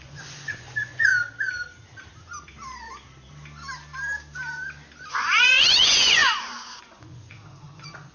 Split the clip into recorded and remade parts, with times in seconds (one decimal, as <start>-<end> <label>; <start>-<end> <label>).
0.0-1.1 remade; 1.1-5.1 recorded; 5.1-8.1 remade

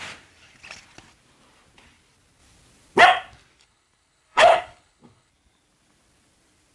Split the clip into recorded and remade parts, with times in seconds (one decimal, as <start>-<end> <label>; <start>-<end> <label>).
0.0-3.6 recorded; 3.6-5.3 remade; 5.3-6.7 recorded